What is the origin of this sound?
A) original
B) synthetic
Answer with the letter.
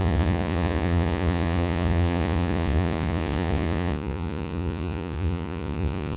B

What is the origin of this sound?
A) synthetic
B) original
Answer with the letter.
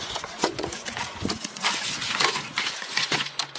A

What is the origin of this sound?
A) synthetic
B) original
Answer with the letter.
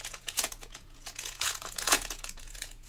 A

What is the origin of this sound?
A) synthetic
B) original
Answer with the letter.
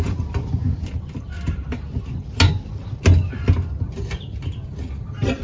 B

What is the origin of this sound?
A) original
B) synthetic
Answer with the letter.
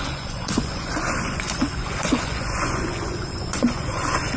B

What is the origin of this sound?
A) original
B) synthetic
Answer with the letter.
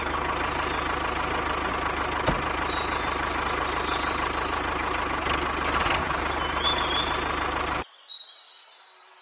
A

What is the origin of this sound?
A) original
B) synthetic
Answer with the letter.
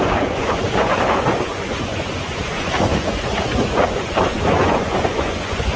B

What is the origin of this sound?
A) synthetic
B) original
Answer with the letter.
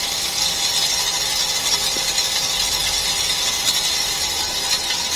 B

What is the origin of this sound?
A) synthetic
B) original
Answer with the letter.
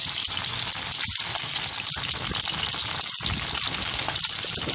B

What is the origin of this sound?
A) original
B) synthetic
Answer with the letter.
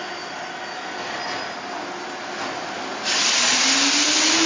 A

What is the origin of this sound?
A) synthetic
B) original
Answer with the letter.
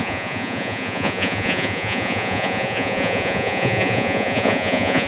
A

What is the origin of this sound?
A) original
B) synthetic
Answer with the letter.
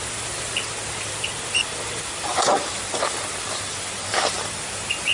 A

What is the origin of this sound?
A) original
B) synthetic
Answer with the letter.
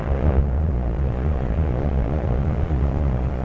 B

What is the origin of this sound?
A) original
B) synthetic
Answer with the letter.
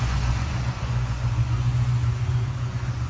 B